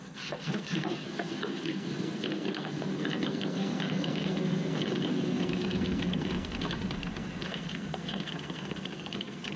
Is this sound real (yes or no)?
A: no